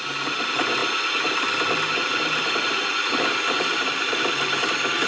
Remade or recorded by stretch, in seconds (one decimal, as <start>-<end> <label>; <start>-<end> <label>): 0.0-5.1 recorded

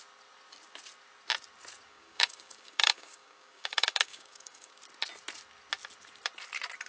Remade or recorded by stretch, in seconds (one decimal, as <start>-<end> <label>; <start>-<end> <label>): 0.0-1.9 recorded; 1.9-4.8 remade; 4.8-6.9 recorded

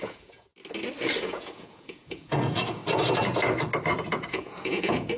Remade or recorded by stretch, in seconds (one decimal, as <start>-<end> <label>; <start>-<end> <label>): 0.0-0.5 remade; 0.5-1.2 recorded; 1.2-2.8 remade; 2.8-4.1 recorded; 4.1-5.2 remade

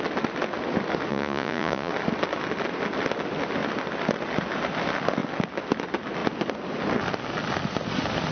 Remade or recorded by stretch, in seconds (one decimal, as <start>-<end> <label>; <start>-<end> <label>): 0.0-1.1 recorded; 1.1-1.9 remade; 1.9-8.3 recorded

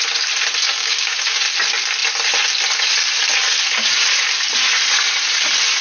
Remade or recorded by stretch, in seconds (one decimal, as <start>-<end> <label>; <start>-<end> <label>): 0.0-0.8 recorded; 0.8-1.4 remade; 1.4-5.8 recorded